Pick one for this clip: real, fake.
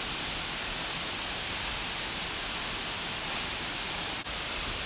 real